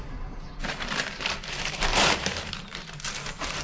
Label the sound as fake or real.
fake